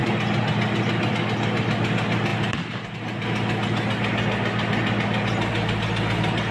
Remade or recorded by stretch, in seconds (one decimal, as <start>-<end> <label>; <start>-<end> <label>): 0.0-6.5 recorded